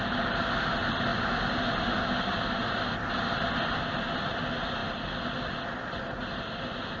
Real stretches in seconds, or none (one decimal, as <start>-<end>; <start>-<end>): 0.0-7.0